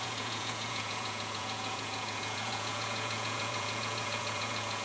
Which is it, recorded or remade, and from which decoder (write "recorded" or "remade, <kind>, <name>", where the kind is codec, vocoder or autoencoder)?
remade, vocoder, Vocos